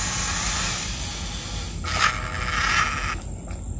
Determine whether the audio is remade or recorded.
recorded